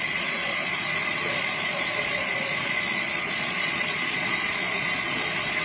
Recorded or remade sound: remade